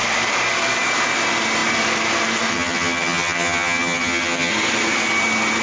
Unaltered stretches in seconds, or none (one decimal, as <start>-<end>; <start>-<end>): 0.0-2.5; 4.5-5.6